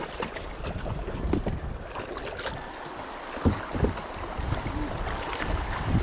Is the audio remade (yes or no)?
no